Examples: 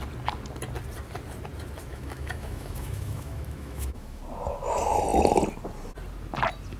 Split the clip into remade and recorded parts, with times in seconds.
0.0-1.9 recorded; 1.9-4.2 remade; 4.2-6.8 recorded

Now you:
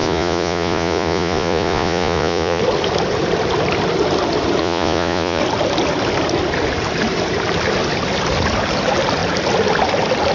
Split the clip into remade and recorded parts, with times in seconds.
0.0-2.6 remade; 2.6-4.6 recorded; 4.6-5.4 remade; 5.4-10.3 recorded

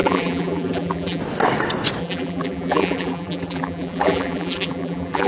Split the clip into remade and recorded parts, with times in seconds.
0.0-1.2 remade; 1.2-2.0 recorded; 2.0-5.3 remade

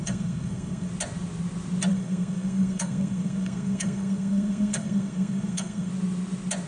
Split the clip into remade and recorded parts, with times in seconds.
0.0-0.9 remade; 0.9-1.9 recorded; 1.9-5.9 remade; 5.9-6.7 recorded

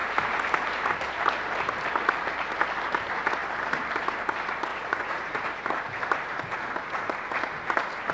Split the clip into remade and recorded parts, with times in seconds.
0.0-4.7 recorded; 4.7-5.5 remade; 5.5-8.1 recorded